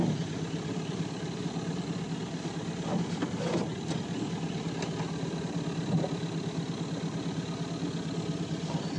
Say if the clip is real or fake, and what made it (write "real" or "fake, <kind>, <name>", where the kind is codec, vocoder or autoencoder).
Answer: real